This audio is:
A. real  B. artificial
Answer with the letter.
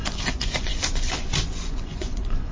B